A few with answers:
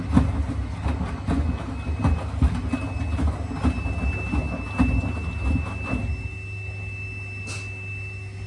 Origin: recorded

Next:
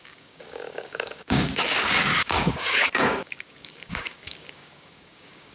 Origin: remade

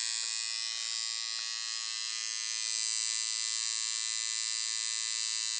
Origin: recorded